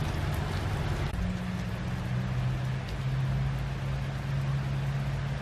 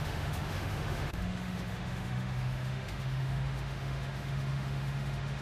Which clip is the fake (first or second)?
second